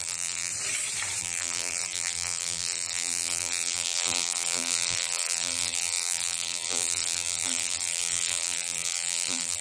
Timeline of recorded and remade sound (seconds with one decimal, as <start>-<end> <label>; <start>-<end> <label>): 0.0-0.5 remade; 0.5-1.2 recorded; 1.2-9.6 remade